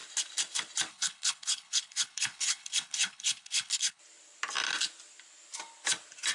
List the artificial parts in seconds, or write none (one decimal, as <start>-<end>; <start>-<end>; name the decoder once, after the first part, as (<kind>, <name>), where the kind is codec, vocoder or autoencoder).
0.9-4.0 (codec, HILCodec)